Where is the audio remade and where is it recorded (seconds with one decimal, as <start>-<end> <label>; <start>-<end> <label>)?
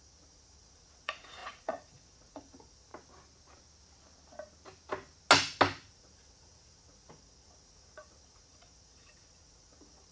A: 0.0-2.9 remade; 2.9-5.9 recorded; 5.9-10.1 remade